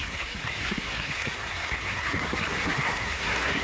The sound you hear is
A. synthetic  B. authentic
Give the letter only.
A